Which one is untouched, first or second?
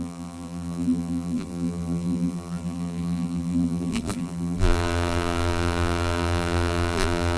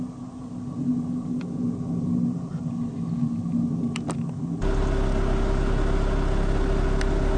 second